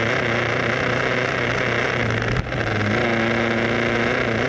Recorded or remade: recorded